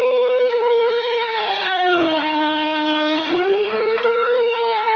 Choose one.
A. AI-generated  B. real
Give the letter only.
A